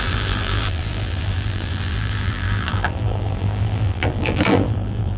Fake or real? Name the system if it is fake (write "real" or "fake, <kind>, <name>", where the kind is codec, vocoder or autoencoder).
fake, vocoder, BigVGAN v2